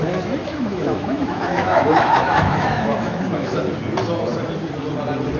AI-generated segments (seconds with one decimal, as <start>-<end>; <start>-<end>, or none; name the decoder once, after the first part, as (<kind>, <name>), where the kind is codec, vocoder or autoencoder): 0.4-3.6 (autoencoder, DAC-VAE)